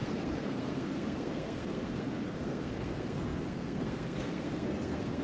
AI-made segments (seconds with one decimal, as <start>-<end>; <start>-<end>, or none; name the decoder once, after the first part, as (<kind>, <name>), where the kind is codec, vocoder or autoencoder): 0.0-5.2 (codec, SNAC)